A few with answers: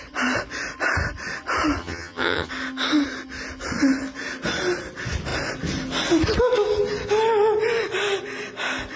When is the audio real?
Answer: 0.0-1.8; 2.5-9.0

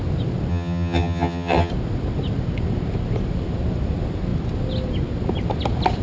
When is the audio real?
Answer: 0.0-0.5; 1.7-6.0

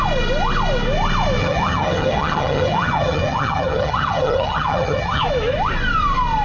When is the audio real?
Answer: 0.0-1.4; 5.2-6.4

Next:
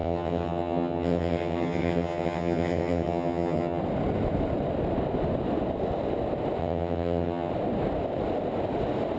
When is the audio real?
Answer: 3.8-6.6; 7.5-9.2

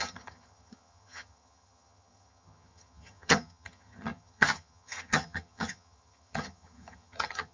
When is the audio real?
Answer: none

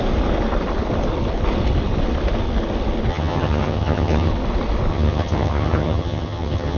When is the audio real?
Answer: 0.0-3.1; 4.3-4.9

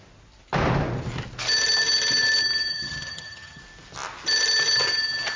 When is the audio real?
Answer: 0.0-2.7; 3.6-5.4